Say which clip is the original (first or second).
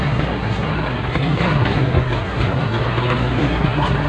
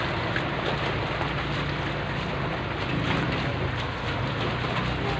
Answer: second